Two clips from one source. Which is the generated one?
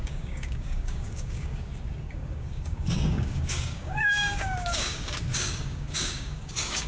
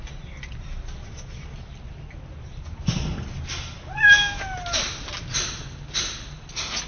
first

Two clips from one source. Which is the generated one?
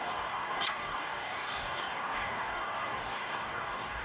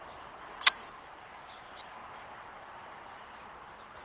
first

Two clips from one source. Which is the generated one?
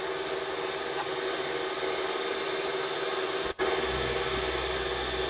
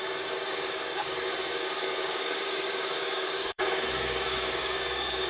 second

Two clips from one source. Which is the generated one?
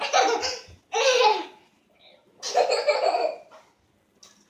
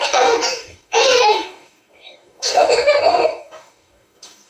second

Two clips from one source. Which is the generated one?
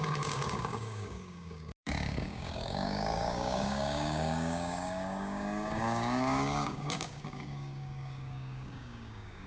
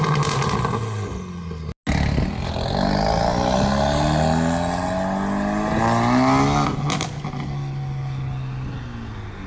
first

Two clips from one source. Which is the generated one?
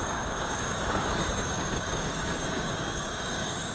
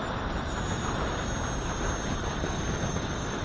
first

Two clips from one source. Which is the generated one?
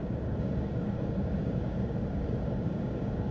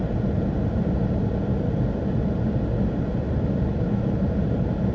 first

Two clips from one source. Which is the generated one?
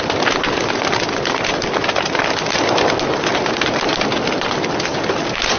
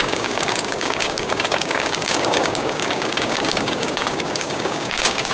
second